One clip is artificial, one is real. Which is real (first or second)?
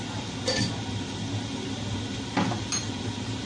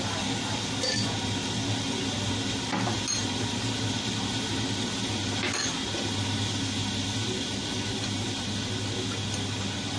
second